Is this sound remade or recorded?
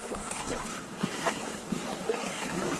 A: remade